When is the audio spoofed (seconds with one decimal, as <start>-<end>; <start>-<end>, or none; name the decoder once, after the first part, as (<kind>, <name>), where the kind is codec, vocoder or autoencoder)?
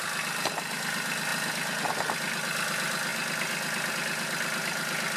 none